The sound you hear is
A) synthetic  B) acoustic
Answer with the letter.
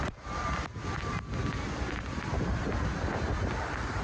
B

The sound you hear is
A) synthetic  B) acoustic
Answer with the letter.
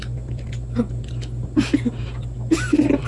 B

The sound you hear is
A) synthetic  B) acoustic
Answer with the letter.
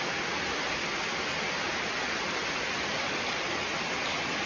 B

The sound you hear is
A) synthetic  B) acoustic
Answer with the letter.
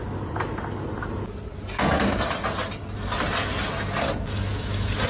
B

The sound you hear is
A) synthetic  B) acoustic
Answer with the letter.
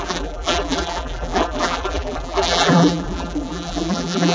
A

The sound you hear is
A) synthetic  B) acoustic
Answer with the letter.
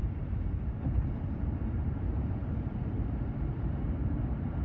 A